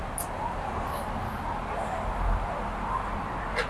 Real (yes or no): yes